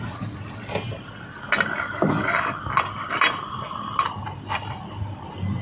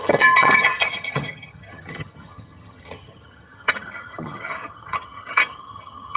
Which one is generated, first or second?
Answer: second